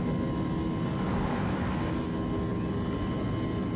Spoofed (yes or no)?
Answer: no